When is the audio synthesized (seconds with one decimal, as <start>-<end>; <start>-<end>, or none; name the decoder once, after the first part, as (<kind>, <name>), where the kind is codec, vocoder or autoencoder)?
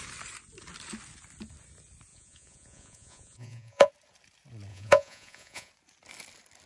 2.1-3.9 (vocoder, Vocos); 4.7-5.7